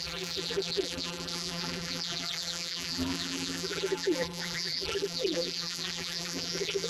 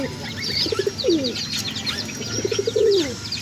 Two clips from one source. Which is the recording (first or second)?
second